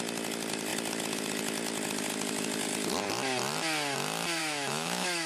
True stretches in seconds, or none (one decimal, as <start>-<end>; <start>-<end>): 0.0-4.4